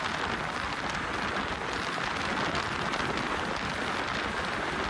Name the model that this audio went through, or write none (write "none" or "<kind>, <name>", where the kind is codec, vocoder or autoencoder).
none